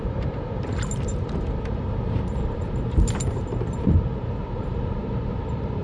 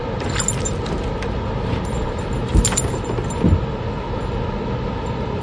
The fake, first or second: first